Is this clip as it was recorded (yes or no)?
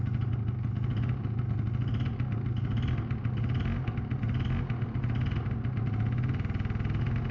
yes